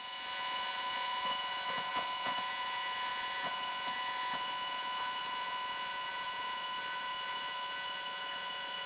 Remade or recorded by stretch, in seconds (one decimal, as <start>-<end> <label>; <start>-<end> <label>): 0.0-8.9 remade